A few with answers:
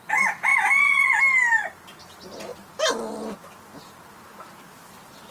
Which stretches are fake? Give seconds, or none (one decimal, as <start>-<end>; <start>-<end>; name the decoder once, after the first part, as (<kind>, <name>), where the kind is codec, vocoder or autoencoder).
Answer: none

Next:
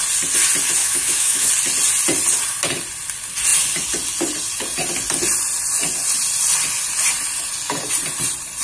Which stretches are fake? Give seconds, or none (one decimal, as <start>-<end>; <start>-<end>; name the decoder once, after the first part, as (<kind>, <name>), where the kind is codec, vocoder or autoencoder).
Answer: 0.8-1.5 (autoencoder, DAC-VAE)

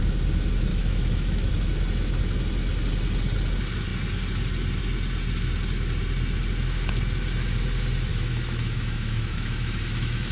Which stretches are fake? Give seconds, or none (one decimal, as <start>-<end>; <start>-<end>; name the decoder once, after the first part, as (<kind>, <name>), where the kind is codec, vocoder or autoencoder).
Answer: 0.7-1.5 (autoencoder, DAC-VAE); 8.1-10.3